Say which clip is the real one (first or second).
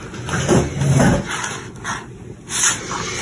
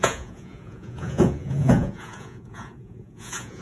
first